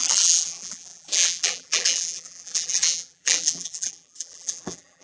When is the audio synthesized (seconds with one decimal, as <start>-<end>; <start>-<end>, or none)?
0.0-5.0